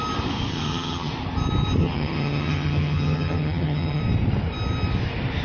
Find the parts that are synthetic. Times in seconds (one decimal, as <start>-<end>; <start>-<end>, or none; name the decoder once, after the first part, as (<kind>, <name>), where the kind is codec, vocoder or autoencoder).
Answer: 0.5-1.1 (vocoder, HiFi-GAN); 1.8-4.0